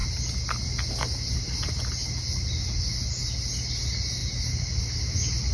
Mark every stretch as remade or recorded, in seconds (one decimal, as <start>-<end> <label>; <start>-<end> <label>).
0.0-5.5 recorded